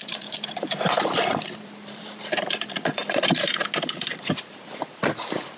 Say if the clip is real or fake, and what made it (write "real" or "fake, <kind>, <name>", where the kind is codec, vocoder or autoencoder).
fake, vocoder, BigVGAN v2